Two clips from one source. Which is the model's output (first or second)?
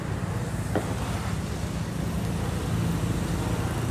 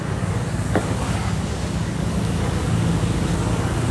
second